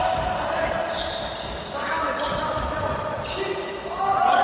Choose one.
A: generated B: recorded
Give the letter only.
B